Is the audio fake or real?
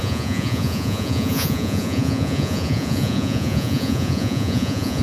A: fake